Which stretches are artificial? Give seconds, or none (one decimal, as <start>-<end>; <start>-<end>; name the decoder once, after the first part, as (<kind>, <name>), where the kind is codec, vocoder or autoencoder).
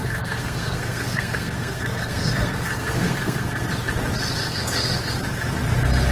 0.0-3.7 (codec, SNAC); 4.4-5.0